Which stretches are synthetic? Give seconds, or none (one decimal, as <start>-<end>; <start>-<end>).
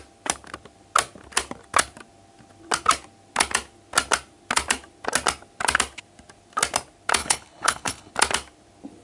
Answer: 7.2-8.1